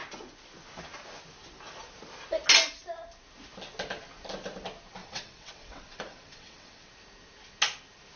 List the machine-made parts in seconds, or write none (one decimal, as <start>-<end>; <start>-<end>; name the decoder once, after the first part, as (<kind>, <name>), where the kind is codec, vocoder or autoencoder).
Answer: 5.0-6.9 (vocoder, WaveNeXt)